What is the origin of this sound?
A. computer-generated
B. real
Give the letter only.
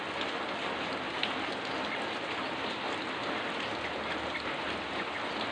B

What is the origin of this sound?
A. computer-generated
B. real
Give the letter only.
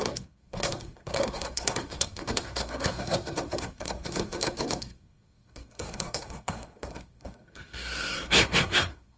A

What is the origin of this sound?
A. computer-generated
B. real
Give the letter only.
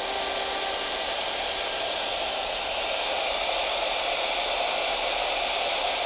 B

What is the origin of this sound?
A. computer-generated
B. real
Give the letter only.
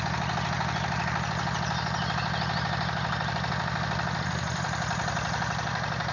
B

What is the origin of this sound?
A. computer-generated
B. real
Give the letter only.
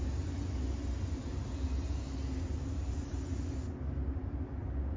B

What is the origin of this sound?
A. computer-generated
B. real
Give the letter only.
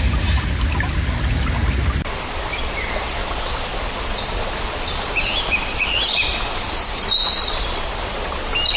B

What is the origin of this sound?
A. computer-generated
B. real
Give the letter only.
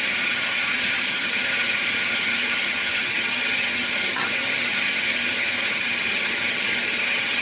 A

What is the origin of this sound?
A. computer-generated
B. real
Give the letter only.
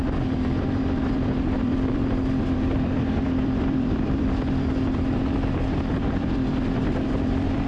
A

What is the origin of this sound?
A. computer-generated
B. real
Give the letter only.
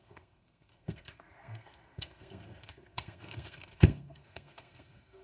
A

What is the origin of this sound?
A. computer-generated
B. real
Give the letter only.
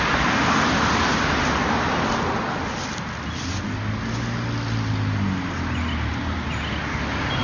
B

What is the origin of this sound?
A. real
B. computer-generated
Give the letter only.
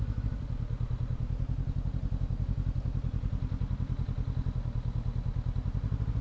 A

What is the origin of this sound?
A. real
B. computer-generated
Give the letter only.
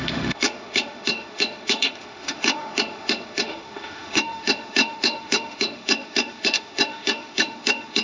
B